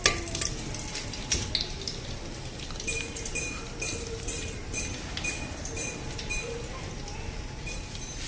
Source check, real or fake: real